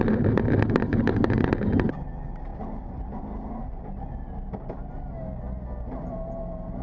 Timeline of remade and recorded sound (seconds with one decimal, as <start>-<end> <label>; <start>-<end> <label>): 0.0-6.8 recorded